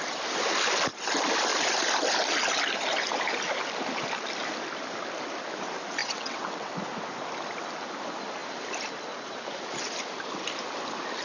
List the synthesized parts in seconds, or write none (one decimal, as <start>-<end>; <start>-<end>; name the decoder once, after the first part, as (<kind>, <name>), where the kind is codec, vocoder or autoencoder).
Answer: 6.0-6.7 (vocoder, WaveNeXt)